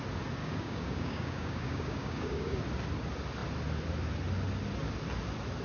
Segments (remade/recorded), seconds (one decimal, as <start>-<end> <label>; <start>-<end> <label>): 0.0-0.4 recorded; 0.4-2.6 remade; 2.6-5.6 recorded